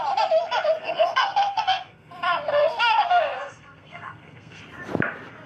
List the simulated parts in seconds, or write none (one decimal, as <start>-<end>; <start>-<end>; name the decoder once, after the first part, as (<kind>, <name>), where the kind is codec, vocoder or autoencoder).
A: 0.8-2.1 (codec, SNAC); 2.5-4.6